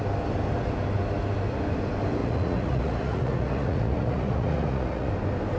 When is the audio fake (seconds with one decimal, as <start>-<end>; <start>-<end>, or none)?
2.2-5.1